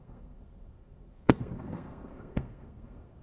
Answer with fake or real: fake